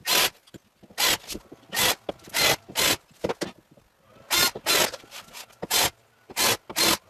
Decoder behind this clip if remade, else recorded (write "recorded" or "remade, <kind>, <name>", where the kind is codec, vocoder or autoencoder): recorded